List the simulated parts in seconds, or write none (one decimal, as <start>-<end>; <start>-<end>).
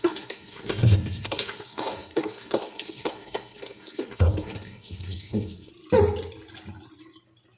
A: 0.0-5.7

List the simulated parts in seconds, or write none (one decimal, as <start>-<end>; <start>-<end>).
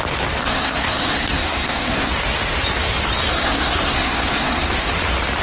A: 0.4-2.1; 3.3-4.9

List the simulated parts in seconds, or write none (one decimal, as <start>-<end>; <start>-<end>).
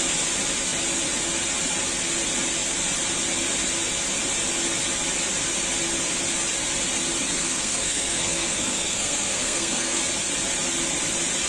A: 7.4-10.0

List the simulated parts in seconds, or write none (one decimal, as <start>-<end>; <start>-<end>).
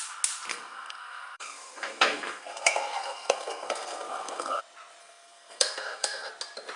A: 0.5-4.6; 5.0-6.3